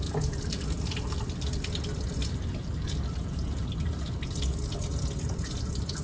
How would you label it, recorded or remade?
remade